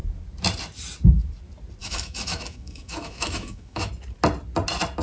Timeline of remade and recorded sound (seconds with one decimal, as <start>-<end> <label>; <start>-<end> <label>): 0.0-1.8 recorded; 1.8-3.9 remade; 3.9-5.0 recorded